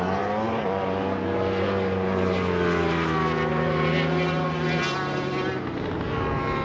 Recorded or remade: recorded